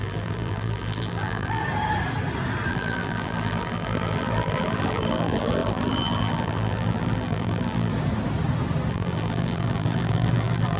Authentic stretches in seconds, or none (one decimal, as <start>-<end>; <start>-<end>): 1.6-2.7; 7.9-8.9